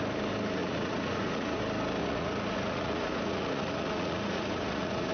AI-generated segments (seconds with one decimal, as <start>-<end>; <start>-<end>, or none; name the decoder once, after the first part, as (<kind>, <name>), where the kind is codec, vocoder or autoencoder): 0.6-1.6 (vocoder, Vocos); 2.0-5.1